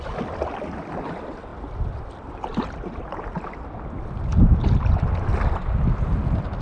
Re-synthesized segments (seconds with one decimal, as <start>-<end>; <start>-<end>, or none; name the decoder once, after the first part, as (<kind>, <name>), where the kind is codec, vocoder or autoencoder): none